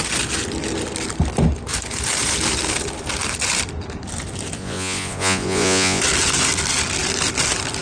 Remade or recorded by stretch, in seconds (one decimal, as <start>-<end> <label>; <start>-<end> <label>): 0.0-4.6 recorded; 4.6-6.0 remade; 6.0-7.8 recorded